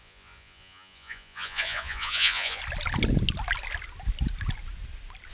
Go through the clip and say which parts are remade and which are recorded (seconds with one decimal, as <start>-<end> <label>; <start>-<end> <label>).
0.0-2.6 remade; 2.6-5.3 recorded